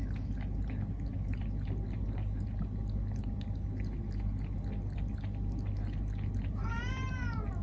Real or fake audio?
real